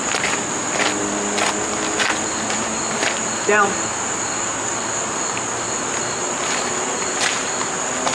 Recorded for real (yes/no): yes